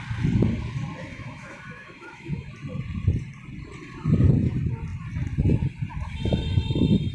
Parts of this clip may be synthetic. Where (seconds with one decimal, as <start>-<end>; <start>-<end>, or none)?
1.1-2.5